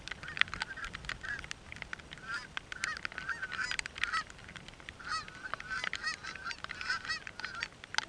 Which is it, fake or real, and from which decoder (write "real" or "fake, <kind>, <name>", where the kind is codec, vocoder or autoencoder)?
real